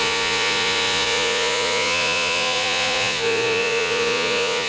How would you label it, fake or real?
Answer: fake